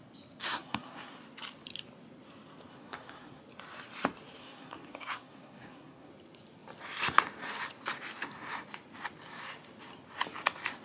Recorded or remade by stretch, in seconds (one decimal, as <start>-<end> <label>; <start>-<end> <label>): 0.0-0.4 recorded; 0.4-1.2 remade; 1.2-2.7 recorded; 2.7-3.4 remade; 3.4-4.4 recorded; 4.4-6.1 remade; 6.1-10.8 recorded